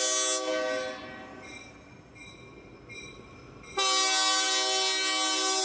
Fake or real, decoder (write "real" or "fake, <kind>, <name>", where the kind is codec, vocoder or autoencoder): real